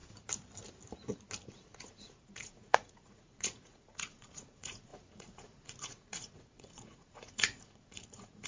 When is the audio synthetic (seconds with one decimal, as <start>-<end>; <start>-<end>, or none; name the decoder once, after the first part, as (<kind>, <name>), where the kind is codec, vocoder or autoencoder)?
1.5-8.5 (vocoder, Vocos)